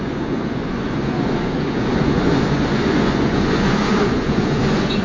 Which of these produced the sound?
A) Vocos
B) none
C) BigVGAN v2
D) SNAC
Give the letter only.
A